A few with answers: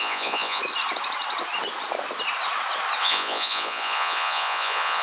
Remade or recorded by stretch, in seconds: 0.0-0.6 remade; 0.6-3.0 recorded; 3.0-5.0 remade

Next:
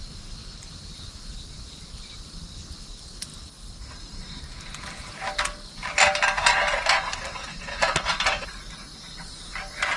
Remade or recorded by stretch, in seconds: 0.0-10.0 recorded

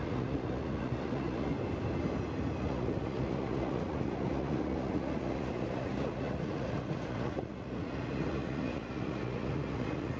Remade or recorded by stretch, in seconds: 0.0-1.5 remade; 1.5-2.6 recorded; 2.6-10.2 remade

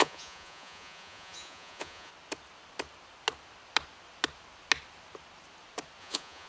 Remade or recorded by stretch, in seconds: 0.0-2.1 remade; 2.1-6.0 recorded; 6.0-6.5 remade